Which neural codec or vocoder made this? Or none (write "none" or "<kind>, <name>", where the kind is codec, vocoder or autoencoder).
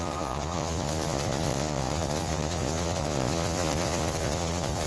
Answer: vocoder, Vocos